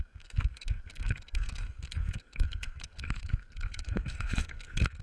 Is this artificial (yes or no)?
yes